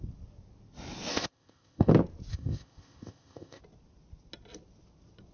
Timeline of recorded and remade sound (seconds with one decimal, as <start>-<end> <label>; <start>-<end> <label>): 0.0-1.1 recorded; 1.1-1.9 remade; 1.9-2.3 recorded; 2.3-3.6 remade; 3.6-5.3 recorded